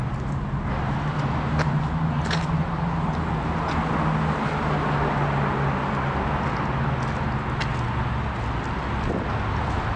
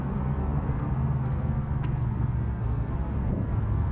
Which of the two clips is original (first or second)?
first